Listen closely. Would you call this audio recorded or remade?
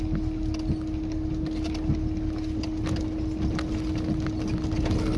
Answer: recorded